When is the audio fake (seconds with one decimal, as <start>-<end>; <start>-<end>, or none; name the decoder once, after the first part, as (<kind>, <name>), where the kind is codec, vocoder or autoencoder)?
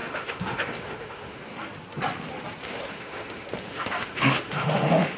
0.0-1.4 (autoencoder, DAC-VAE); 2.6-5.2